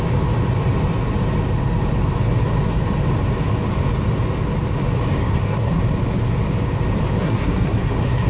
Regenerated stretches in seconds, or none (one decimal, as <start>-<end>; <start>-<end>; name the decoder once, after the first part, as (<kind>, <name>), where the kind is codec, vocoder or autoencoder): 5.2-5.8 (codec, SNAC); 7.1-8.3